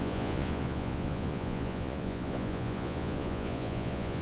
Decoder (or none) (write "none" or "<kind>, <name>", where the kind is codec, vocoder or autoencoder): vocoder, Vocos